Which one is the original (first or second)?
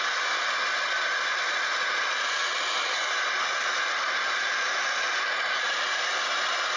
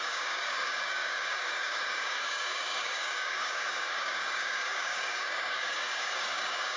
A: first